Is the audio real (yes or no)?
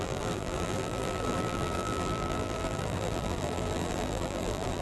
no